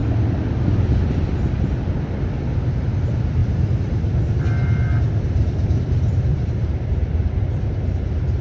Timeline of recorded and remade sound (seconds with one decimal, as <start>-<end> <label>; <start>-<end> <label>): 0.0-3.4 recorded; 3.4-4.4 remade; 4.4-6.3 recorded; 6.3-7.0 remade; 7.0-8.4 recorded

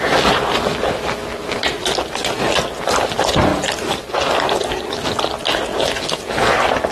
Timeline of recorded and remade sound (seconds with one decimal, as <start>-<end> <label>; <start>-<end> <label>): 0.0-6.9 recorded

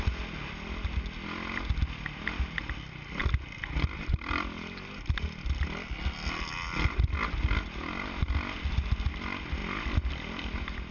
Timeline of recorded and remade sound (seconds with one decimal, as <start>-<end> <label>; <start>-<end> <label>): 0.0-10.9 recorded

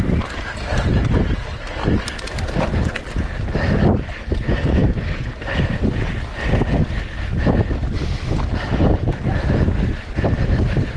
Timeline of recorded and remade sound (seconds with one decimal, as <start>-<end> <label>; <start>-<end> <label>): 0.0-10.1 recorded; 10.1-11.0 remade

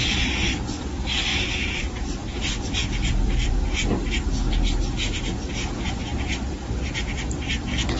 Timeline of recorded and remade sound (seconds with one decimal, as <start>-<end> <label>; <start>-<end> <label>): 0.0-0.8 remade; 0.8-1.3 recorded; 1.3-3.5 remade; 3.5-6.1 recorded; 6.1-8.0 remade

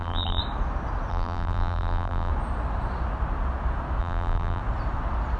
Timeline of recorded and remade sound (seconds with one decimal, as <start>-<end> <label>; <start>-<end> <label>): 0.0-0.4 remade; 0.4-1.1 recorded; 1.1-2.3 remade; 2.3-4.0 recorded; 4.0-4.6 remade; 4.6-5.4 recorded

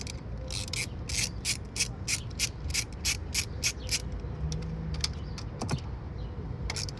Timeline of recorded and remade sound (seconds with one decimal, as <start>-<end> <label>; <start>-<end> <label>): 0.0-7.0 recorded